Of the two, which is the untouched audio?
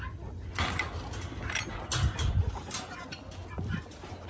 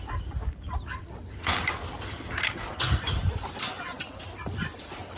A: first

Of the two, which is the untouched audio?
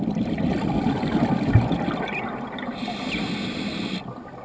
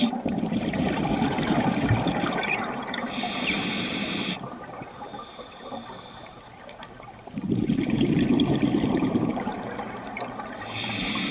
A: first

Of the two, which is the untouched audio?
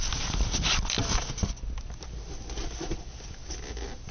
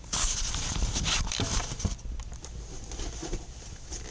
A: first